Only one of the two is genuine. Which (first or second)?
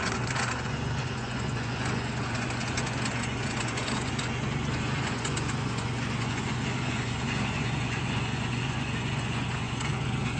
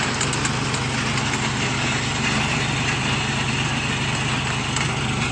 second